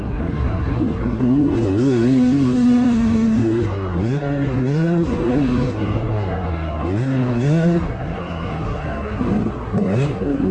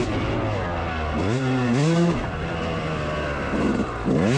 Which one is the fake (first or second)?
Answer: first